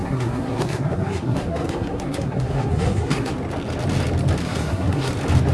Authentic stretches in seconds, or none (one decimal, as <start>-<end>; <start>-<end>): 3.3-4.4; 5.1-5.5